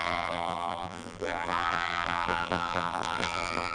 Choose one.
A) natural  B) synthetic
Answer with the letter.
B